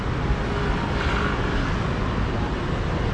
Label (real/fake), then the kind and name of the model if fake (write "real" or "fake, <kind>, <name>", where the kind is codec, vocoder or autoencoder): real